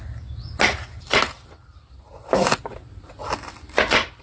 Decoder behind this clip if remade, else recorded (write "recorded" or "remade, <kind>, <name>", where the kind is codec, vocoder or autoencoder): recorded